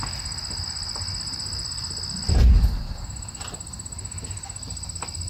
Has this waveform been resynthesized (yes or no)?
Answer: no